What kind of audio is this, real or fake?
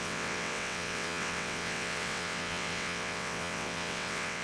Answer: fake